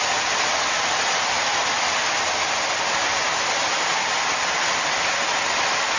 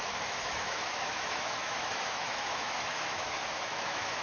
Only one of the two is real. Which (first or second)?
first